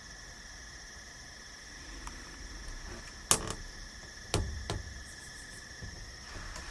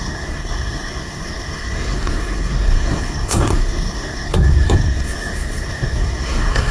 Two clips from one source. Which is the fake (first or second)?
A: second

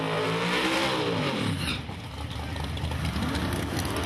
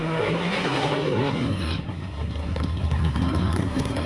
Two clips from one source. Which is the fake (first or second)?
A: second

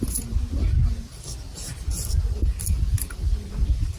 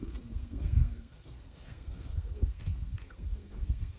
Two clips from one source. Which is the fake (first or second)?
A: second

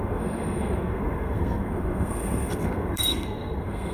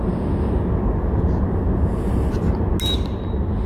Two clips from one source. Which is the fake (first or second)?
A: first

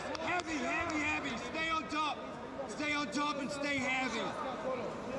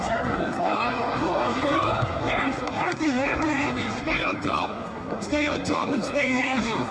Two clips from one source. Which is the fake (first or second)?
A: second